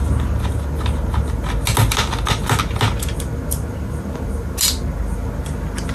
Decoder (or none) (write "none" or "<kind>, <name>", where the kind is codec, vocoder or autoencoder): none